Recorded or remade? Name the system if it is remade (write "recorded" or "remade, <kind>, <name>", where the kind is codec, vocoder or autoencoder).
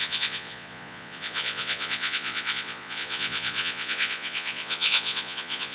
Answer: remade, vocoder, Vocos